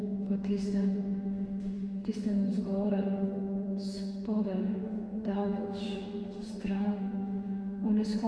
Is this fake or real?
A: fake